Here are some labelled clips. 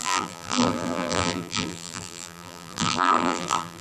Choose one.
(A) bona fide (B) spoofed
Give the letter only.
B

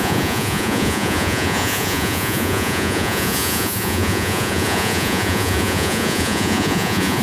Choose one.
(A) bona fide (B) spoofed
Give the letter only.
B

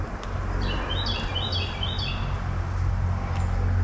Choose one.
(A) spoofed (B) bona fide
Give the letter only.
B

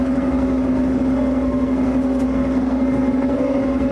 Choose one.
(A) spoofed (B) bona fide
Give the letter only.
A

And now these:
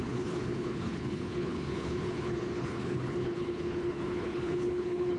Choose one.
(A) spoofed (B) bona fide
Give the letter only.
A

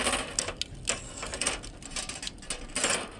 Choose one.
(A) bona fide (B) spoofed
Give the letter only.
A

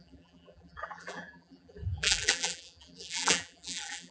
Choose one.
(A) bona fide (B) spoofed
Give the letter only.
B